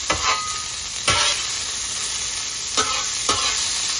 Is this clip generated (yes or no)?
no